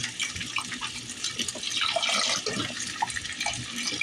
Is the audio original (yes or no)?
yes